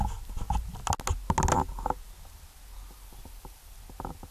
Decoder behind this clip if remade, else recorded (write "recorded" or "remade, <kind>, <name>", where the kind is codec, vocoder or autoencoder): recorded